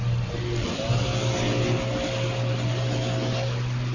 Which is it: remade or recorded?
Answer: recorded